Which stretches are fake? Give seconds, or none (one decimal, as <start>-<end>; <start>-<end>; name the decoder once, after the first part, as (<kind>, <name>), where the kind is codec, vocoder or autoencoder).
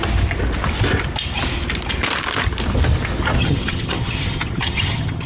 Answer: 3.4-5.3 (vocoder, HiFi-GAN)